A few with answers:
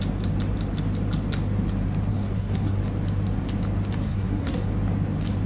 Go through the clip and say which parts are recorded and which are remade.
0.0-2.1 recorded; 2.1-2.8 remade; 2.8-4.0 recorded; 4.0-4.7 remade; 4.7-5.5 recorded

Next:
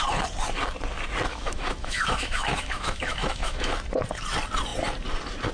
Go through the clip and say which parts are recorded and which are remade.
0.0-1.3 recorded; 1.3-3.7 remade; 3.7-5.5 recorded